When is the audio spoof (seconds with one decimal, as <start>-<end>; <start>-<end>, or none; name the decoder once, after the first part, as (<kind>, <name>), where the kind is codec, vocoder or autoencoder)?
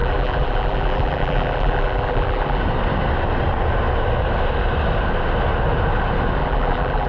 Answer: 0.0-2.6 (vocoder, BigVGAN v2); 6.4-7.1